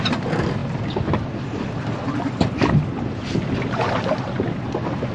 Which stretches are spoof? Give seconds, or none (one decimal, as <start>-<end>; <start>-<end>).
none